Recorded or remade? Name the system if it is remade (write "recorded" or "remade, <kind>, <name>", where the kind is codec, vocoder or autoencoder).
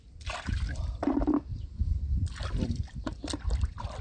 remade, vocoder, BigVGAN v2